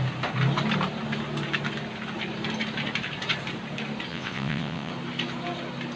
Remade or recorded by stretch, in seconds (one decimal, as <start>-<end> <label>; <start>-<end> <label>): 0.0-4.1 recorded; 4.1-4.9 remade; 4.9-6.0 recorded